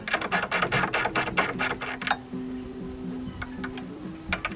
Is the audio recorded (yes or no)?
yes